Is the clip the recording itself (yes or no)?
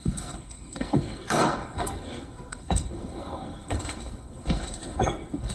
no